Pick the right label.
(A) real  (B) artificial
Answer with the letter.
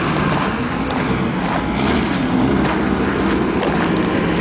A